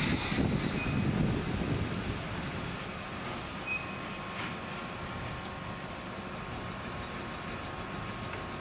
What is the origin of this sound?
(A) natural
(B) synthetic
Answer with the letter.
A